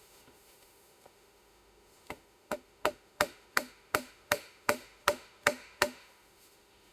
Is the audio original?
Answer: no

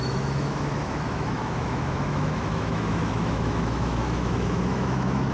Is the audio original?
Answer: no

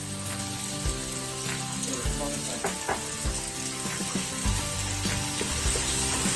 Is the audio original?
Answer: yes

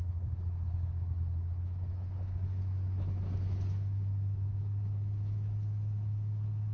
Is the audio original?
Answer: no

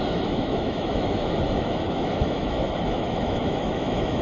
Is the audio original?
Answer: no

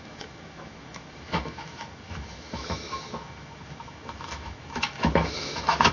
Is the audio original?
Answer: no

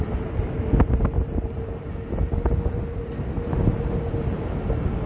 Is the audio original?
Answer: yes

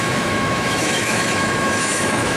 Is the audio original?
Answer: no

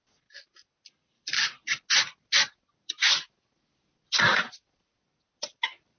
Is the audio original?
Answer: yes